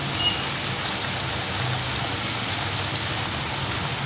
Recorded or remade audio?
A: recorded